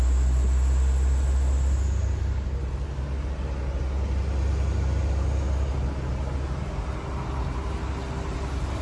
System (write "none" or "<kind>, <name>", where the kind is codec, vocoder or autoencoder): none